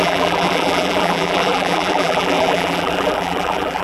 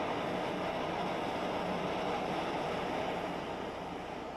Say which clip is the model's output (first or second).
first